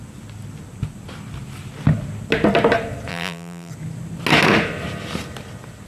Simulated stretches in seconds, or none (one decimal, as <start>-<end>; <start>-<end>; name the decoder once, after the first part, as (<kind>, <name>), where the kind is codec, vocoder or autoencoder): 3.1-3.7 (vocoder, BigVGAN v2)